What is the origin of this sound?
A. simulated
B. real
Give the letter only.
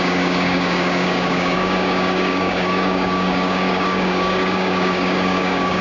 A